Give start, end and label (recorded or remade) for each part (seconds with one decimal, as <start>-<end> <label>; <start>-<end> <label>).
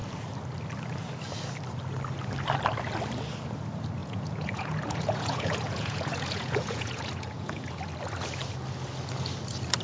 0.0-4.0 recorded; 4.0-7.8 remade; 7.8-9.8 recorded